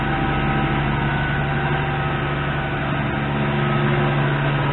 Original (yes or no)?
yes